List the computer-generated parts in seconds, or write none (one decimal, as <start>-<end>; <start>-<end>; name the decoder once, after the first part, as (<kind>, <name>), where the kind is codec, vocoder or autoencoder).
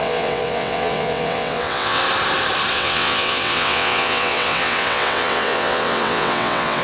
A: 0.0-2.0 (vocoder, WaveNeXt); 2.7-6.8